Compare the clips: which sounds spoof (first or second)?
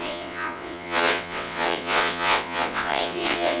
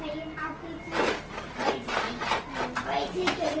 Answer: first